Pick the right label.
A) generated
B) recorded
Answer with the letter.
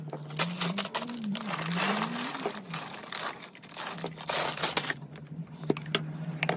B